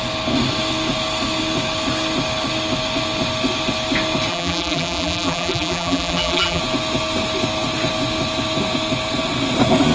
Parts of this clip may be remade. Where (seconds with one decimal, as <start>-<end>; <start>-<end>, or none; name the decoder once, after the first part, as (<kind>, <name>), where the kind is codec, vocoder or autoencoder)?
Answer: 4.3-6.6 (vocoder, BigVGAN v2)

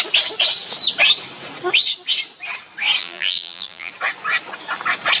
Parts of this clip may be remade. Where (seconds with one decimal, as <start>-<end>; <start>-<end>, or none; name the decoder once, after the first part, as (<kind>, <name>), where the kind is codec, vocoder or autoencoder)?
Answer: 3.0-3.9 (vocoder, BigVGAN v2)

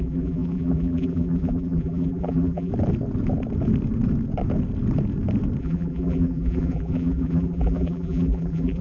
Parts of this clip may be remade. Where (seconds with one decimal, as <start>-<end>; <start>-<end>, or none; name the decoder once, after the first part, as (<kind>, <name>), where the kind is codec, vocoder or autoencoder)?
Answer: 0.0-2.7 (vocoder, BigVGAN v2); 5.6-8.8

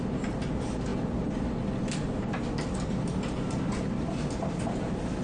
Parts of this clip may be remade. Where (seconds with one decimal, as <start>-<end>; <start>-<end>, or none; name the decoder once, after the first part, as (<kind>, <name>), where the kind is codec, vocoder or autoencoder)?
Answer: none

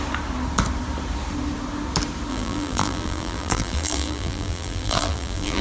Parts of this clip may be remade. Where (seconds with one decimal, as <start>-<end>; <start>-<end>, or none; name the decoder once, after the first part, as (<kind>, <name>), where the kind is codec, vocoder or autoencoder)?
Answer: 2.3-5.6 (vocoder, BigVGAN v2)

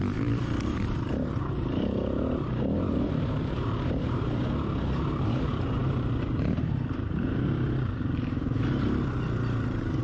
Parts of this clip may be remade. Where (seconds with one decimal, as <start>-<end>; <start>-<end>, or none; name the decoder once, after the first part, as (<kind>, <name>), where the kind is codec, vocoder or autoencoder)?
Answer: 0.0-4.4 (vocoder, BigVGAN v2); 5.2-10.0

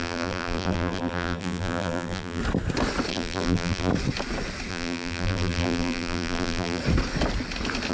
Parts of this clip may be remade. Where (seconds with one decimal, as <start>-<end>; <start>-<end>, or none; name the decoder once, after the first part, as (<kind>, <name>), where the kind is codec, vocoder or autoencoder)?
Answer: 0.0-2.4 (vocoder, BigVGAN v2); 3.1-3.9; 4.7-6.8

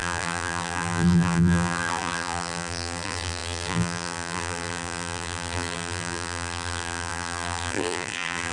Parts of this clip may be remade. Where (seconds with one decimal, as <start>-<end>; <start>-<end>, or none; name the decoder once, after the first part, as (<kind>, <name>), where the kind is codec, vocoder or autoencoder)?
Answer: 0.0-8.5 (vocoder, BigVGAN v2)